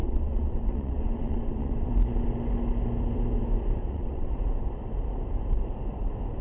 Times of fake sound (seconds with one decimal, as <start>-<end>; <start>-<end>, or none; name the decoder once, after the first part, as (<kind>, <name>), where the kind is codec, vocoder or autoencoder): 0.0-1.9 (vocoder, WaveNeXt); 3.8-4.3